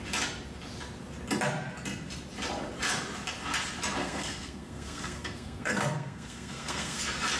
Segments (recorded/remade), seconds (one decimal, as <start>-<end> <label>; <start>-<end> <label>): 0.0-4.0 recorded; 4.0-7.0 remade; 7.0-7.4 recorded